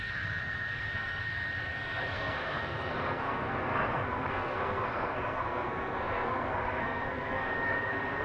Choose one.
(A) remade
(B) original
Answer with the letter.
A